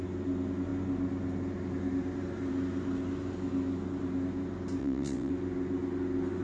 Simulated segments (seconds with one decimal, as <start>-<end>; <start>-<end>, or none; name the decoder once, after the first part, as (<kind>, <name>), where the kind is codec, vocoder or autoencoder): 4.8-5.3 (vocoder, WaveNeXt)